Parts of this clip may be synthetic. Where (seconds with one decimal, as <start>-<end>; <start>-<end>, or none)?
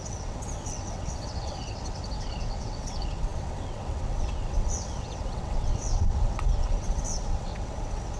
0.0-8.2